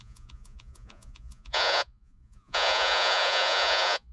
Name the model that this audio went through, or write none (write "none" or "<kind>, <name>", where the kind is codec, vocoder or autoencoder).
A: vocoder, Vocos